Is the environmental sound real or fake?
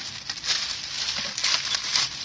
real